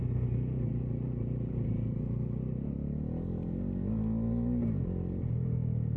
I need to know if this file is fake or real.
real